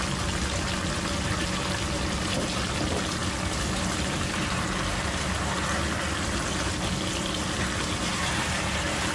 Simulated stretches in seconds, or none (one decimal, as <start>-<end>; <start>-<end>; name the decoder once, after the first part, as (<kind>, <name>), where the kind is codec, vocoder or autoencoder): none